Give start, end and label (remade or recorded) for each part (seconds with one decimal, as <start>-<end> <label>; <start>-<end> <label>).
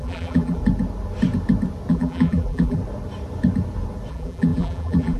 0.0-0.6 remade; 0.6-1.9 recorded; 1.9-2.8 remade; 2.8-4.1 recorded; 4.1-5.2 remade